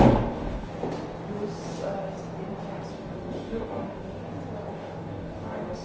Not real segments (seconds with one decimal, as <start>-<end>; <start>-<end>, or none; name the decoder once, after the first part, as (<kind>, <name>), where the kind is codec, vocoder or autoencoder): 0.0-0.7 (codec, DAC); 2.9-4.2; 4.7-5.8